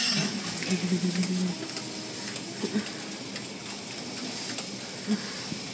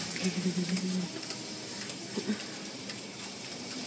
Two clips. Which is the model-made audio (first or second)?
second